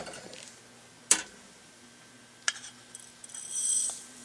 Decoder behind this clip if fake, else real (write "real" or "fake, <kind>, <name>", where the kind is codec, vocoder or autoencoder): real